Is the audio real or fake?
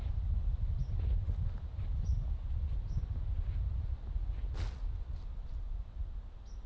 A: real